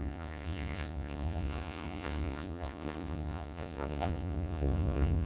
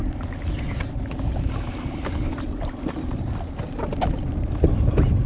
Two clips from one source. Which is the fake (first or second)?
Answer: first